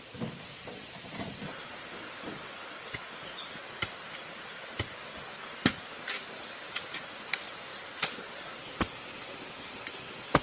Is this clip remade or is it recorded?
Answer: recorded